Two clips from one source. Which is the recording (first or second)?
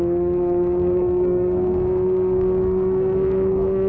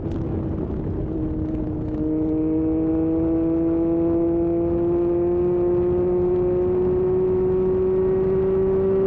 second